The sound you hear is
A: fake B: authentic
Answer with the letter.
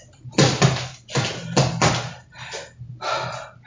B